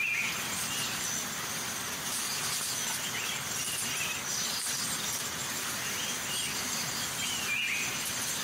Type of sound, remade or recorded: recorded